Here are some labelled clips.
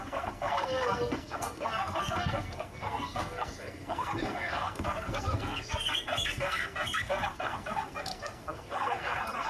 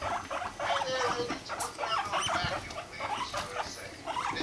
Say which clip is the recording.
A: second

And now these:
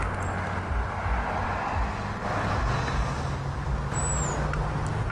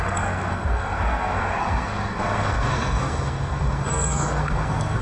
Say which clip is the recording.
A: first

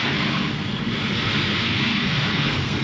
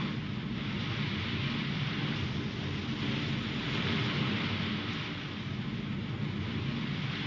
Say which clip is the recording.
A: second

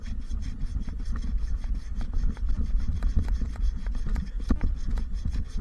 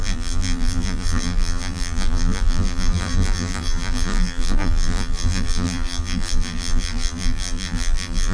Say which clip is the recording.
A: first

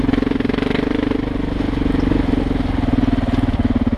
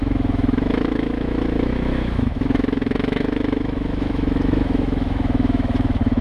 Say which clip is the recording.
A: first